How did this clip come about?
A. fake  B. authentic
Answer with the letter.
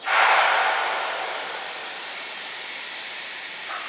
B